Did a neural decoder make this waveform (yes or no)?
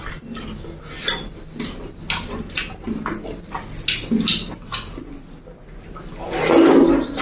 no